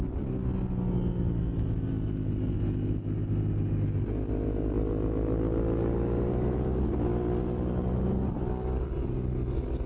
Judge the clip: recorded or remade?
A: recorded